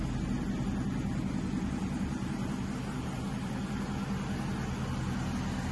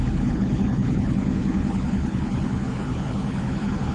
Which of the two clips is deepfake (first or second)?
second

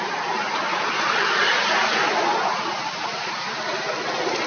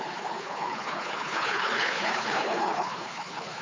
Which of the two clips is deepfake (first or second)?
second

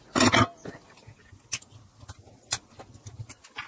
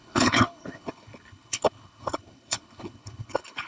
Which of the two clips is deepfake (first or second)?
second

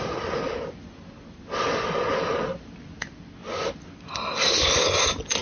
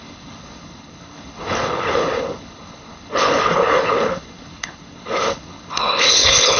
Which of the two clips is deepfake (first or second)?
second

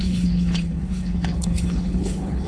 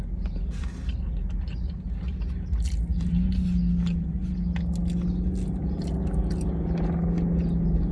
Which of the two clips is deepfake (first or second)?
first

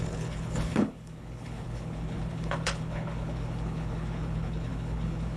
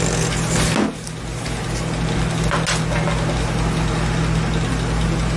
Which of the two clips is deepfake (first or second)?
first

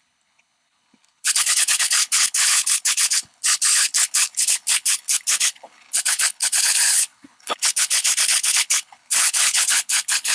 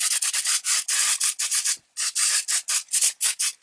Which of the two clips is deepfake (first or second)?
first